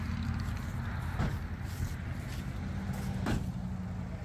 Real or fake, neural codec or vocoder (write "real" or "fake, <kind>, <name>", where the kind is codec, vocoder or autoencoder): real